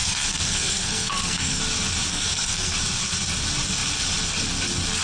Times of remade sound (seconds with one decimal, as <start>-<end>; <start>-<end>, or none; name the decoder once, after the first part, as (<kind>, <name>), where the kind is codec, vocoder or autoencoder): 0.0-1.6 (codec, SNAC); 2.1-2.7